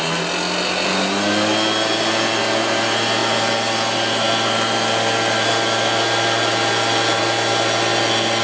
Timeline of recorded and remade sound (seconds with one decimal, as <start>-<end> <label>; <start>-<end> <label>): 0.0-8.4 recorded

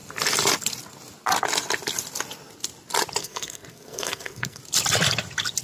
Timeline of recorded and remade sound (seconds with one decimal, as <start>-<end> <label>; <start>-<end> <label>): 0.0-3.2 recorded; 3.2-4.6 remade; 4.6-5.6 recorded

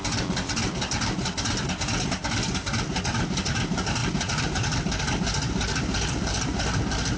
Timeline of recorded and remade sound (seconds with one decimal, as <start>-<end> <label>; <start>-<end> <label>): 0.0-7.2 recorded

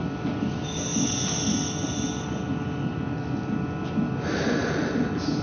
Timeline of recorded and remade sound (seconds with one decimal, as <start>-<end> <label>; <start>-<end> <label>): 0.0-5.4 recorded

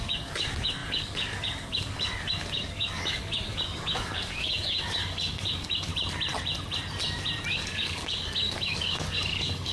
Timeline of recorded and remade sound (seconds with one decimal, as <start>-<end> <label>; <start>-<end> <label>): 0.0-5.9 remade; 5.9-7.5 recorded; 7.5-9.7 remade

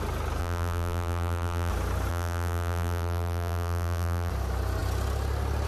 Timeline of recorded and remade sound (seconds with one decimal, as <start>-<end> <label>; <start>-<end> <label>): 0.0-0.4 recorded; 0.4-1.7 remade; 1.7-2.1 recorded; 2.1-4.3 remade; 4.3-5.7 recorded